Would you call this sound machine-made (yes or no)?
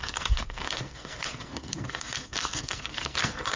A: yes